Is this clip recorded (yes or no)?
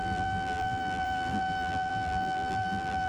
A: no